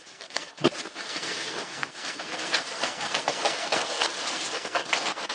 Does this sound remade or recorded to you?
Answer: remade